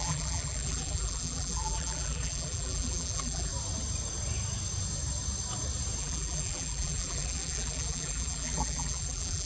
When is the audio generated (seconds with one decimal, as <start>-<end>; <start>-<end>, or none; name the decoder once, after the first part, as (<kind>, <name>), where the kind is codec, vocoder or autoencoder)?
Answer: 0.0-3.5 (vocoder, BigVGAN v2); 6.0-9.5